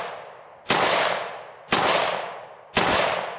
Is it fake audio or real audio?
real